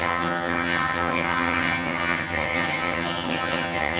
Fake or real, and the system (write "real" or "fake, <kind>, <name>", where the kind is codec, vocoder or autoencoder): fake, vocoder, HiFi-GAN